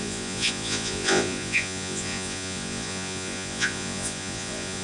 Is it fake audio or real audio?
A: fake